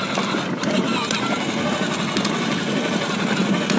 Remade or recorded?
recorded